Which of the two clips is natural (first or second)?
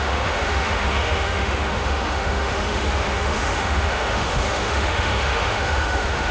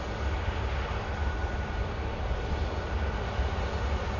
second